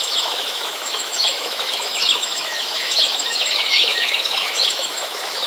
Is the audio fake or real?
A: fake